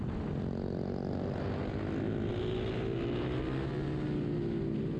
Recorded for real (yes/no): yes